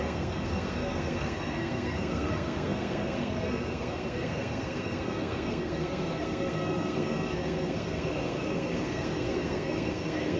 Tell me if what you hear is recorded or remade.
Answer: remade